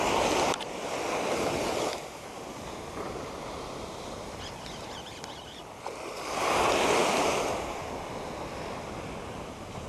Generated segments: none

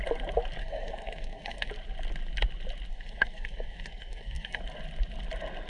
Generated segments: 0.6-1.7 (codec, SNAC); 2.9-4.6

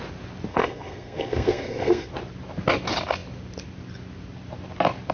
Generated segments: 0.5-2.1 (codec, SNAC)

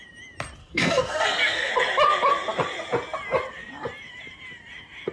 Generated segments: 0.6-1.7 (codec, SNAC)

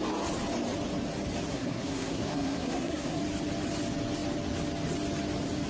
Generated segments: 1.5-3.2 (codec, SNAC)

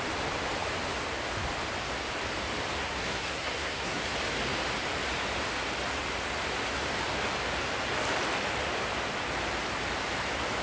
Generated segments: 2.8-4.0 (codec, SNAC)

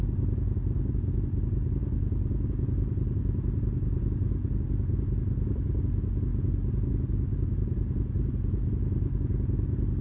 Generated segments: none